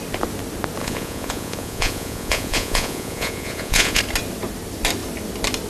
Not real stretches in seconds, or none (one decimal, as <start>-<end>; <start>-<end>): 0.8-4.0